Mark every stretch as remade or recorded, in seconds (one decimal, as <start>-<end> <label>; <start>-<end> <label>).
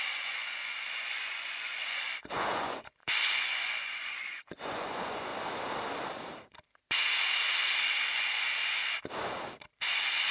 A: 0.0-5.3 remade; 5.3-8.0 recorded; 8.0-8.6 remade; 8.6-10.3 recorded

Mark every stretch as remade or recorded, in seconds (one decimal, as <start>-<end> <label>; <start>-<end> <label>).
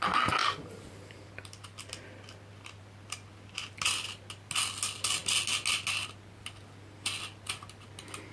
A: 0.0-8.3 recorded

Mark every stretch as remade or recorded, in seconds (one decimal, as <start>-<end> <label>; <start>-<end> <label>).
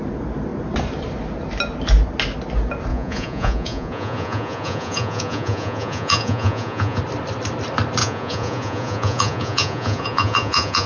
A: 0.0-2.9 recorded; 2.9-7.0 remade; 7.0-8.0 recorded; 8.0-10.9 remade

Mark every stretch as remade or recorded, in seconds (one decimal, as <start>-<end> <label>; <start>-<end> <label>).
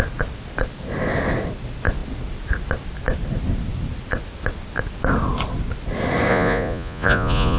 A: 0.0-6.3 recorded; 6.3-7.6 remade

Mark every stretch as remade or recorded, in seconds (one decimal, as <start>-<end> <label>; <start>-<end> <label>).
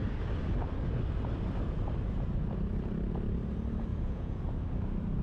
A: 0.0-3.9 recorded; 3.9-4.5 remade; 4.5-5.2 recorded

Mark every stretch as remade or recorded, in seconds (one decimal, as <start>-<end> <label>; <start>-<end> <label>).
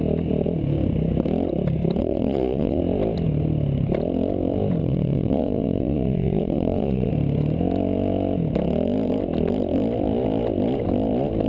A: 0.0-2.0 recorded; 2.0-2.8 remade; 2.8-4.8 recorded; 4.8-7.1 remade; 7.1-11.5 recorded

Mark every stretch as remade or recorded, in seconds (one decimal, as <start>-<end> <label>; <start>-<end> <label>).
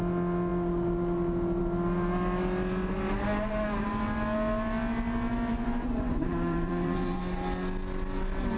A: 0.0-5.5 recorded; 5.5-7.2 remade; 7.2-8.6 recorded